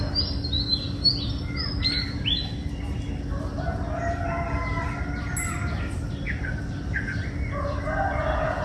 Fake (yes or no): no